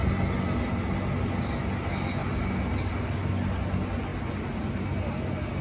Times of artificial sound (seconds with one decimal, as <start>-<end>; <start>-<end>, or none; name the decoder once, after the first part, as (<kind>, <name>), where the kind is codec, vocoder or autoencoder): none